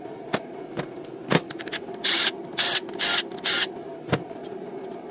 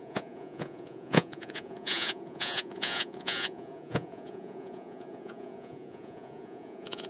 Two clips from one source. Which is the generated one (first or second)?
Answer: second